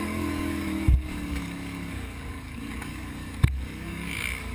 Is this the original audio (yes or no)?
no